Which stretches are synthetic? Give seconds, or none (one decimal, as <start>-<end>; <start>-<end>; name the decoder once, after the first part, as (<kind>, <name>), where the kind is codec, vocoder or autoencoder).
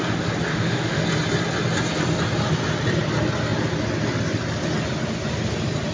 0.5-1.0 (autoencoder, DAC-VAE)